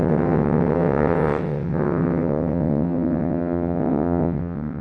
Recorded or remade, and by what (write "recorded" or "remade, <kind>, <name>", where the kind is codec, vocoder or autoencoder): remade, vocoder, WaveNeXt